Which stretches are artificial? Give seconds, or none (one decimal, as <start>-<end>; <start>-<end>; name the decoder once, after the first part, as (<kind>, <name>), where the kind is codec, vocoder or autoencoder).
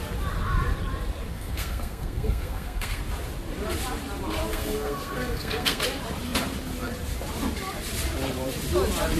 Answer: 1.3-3.0 (codec, SNAC); 4.5-5.8